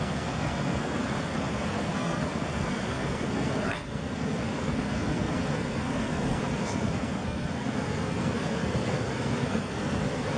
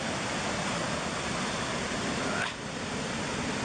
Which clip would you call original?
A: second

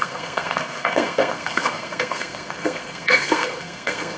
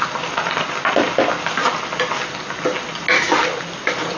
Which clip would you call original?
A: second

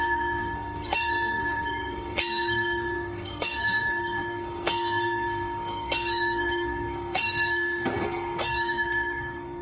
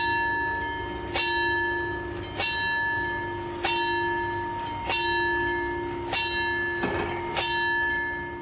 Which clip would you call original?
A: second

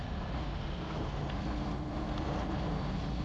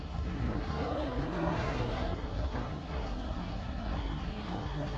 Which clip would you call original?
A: first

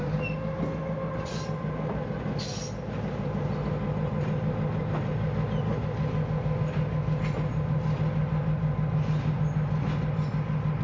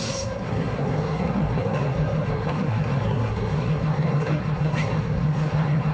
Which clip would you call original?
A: first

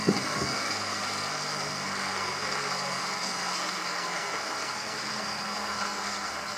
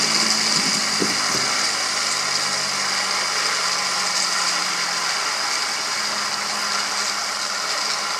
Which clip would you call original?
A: second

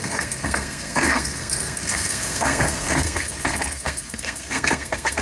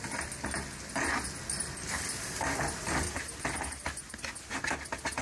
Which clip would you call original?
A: second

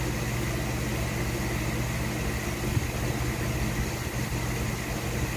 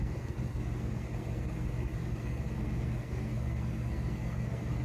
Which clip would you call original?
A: first